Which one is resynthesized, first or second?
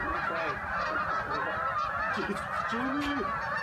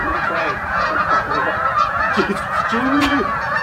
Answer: second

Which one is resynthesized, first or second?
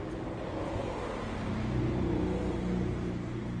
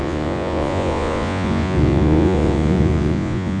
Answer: second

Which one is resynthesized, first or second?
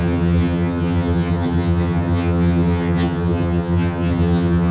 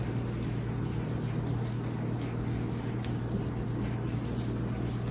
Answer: first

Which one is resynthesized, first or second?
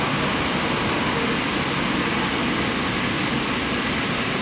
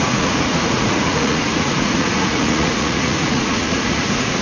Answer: second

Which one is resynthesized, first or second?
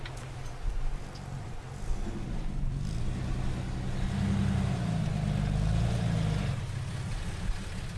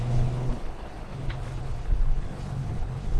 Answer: second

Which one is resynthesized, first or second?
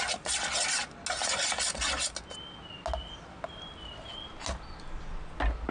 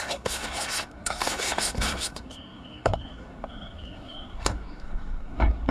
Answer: second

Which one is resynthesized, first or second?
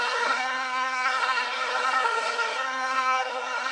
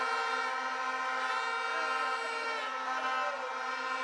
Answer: first